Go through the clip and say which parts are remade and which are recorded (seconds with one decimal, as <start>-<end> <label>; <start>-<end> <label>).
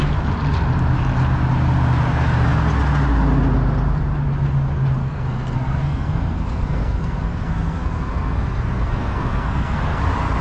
0.0-5.0 recorded; 5.0-10.0 remade; 10.0-10.4 recorded